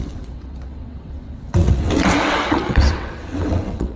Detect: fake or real fake